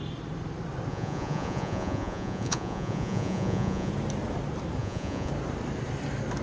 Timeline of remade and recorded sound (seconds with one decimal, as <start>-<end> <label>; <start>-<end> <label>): 0.0-0.9 recorded; 0.9-3.9 remade; 3.9-4.8 recorded; 4.8-5.3 remade; 5.3-6.4 recorded